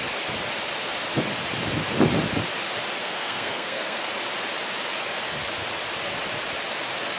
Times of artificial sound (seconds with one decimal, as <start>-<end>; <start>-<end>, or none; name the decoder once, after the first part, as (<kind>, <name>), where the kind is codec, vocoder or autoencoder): 3.0-4.1 (codec, SNAC)